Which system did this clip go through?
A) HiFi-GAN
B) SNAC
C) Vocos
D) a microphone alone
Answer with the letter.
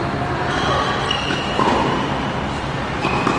D